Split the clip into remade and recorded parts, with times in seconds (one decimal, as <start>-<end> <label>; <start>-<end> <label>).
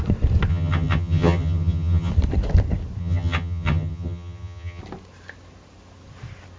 0.0-0.5 recorded; 0.5-2.1 remade; 2.1-3.0 recorded; 3.0-4.8 remade; 4.8-6.6 recorded